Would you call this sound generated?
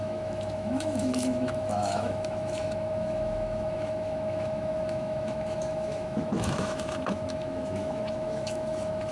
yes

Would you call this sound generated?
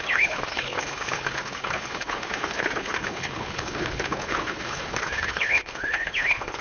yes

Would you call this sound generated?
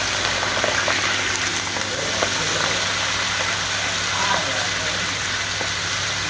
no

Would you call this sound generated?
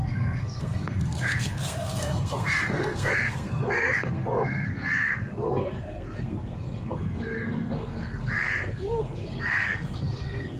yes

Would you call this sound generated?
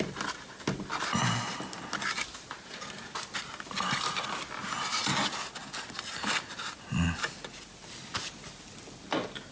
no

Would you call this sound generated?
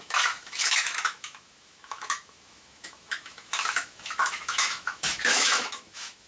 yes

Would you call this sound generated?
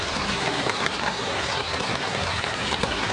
yes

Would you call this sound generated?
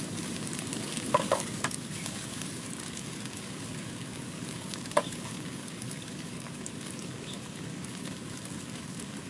yes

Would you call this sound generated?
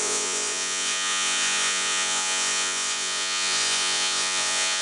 yes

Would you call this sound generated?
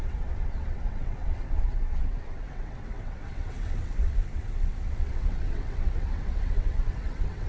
yes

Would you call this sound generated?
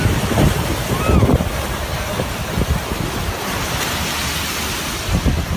no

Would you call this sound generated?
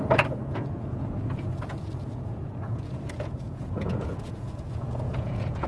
yes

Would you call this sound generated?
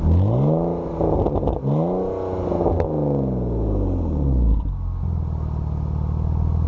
no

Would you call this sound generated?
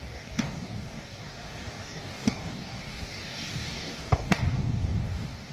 yes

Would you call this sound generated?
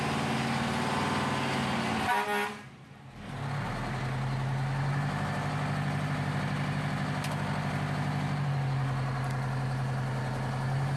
no